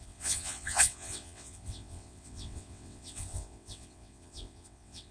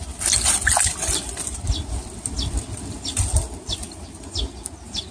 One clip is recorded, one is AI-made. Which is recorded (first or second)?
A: second